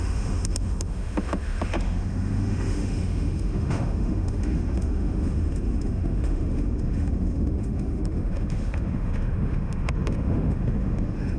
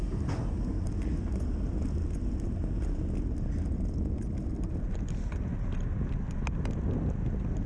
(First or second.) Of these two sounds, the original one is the second